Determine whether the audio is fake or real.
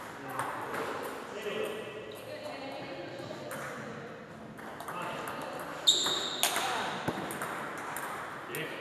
real